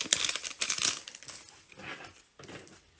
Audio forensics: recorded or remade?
recorded